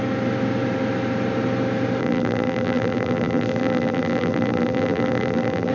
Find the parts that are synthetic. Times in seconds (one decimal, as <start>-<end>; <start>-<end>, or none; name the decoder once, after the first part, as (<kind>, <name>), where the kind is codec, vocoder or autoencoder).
2.0-5.7 (vocoder, BigVGAN v2)